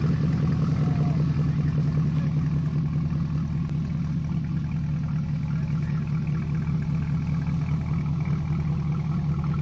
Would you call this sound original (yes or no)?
yes